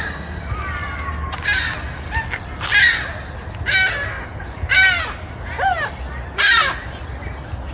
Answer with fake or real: real